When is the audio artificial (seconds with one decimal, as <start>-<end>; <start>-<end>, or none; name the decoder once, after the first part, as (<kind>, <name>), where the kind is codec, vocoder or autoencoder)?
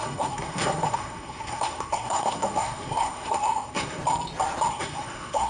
0.0-4.0 (codec, SNAC); 4.7-5.5